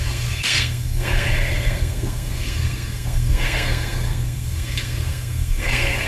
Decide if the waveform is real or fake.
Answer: fake